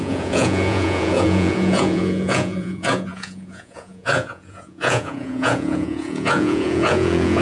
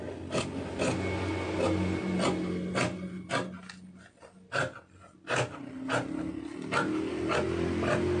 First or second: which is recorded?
second